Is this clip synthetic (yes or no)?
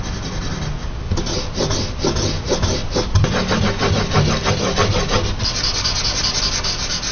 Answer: no